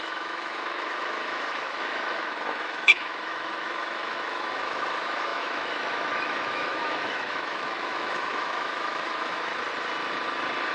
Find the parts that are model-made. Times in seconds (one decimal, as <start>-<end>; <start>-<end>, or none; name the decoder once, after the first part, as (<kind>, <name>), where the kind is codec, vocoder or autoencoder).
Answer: 0.0-9.5 (autoencoder, DAC-VAE)